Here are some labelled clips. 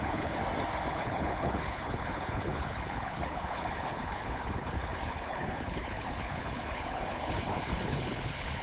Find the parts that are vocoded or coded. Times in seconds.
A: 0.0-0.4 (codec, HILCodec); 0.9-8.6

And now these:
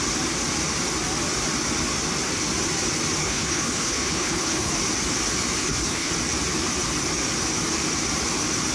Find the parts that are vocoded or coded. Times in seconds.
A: 3.2-4.7 (codec, HILCodec); 5.6-6.1

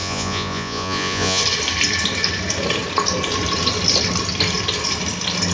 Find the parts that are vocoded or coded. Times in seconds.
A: 0.0-1.4 (vocoder, Vocos)